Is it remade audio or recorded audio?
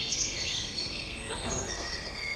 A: remade